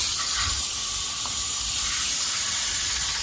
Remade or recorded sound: recorded